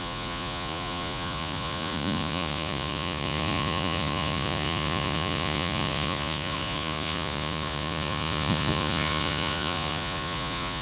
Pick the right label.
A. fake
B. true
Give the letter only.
A